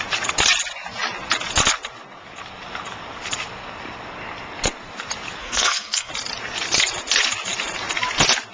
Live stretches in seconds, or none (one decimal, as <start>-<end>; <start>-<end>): 0.0-5.4; 6.1-8.5